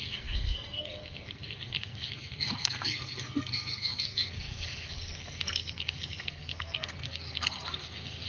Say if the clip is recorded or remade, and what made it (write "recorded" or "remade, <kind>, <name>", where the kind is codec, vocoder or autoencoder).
remade, codec, SNAC